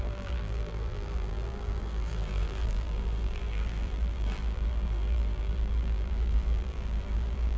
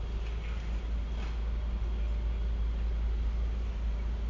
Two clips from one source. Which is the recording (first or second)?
second